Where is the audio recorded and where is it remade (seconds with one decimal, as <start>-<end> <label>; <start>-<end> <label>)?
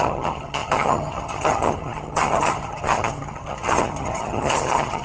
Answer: 0.0-5.0 remade